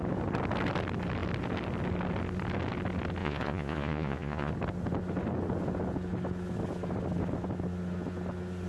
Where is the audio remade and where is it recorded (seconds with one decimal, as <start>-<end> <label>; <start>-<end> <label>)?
0.0-3.2 recorded; 3.2-4.5 remade; 4.5-8.7 recorded